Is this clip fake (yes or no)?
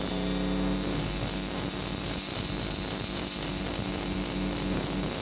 no